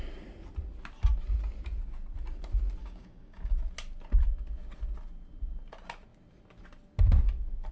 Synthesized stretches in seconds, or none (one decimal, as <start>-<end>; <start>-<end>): 2.8-3.5